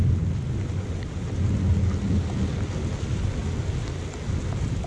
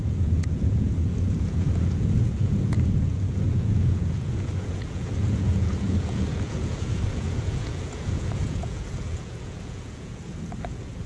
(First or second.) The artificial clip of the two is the second